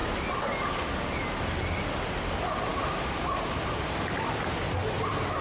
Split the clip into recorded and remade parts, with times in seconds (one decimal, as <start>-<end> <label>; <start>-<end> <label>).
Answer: 0.0-5.4 recorded